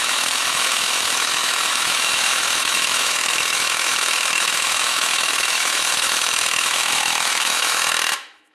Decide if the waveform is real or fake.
fake